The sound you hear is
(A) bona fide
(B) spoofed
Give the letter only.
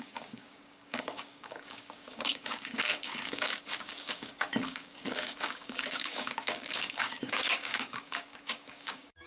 B